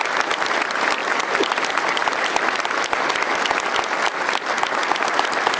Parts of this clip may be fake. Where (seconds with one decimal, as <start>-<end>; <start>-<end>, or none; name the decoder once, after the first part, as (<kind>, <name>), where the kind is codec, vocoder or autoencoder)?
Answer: none